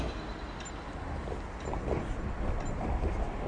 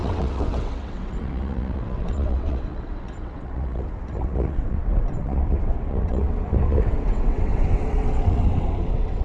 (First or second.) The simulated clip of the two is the second